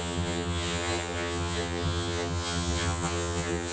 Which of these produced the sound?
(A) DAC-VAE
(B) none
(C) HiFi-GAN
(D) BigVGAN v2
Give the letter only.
C